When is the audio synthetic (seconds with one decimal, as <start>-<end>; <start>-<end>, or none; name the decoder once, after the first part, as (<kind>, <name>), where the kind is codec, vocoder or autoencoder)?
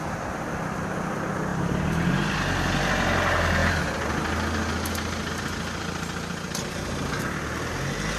none